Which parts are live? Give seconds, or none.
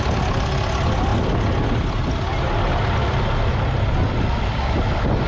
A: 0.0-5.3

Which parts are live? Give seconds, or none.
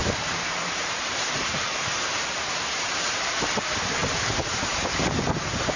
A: 3.5-4.0; 5.1-5.8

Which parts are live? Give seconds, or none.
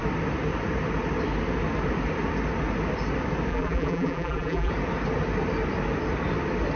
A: 0.0-3.5; 4.7-6.8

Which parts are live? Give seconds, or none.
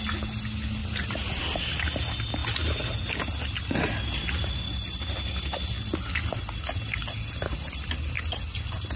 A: 0.0-0.8; 1.4-9.0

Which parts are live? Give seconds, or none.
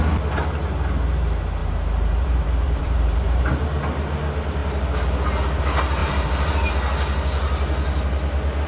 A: 0.0-1.6; 3.4-6.0; 6.7-8.7